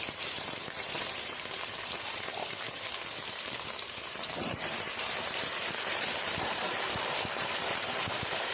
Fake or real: fake